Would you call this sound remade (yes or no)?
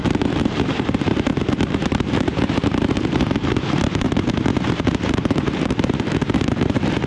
yes